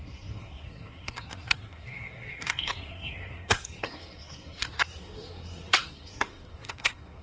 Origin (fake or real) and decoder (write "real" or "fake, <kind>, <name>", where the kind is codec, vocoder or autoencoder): fake, codec, SNAC